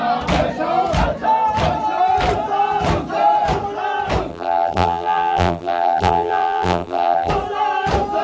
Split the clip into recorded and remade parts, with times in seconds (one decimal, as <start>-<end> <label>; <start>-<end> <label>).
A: 0.0-4.3 recorded; 4.3-7.3 remade; 7.3-8.2 recorded